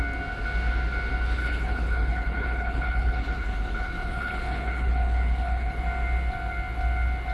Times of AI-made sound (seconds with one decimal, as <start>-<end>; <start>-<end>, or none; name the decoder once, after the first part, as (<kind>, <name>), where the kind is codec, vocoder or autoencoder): 1.4-5.8 (codec, HILCodec)